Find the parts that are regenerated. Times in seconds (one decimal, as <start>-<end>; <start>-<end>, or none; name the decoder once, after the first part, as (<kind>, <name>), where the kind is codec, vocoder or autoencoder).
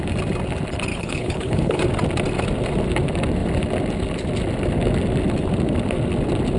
0.9-1.8 (codec, HILCodec)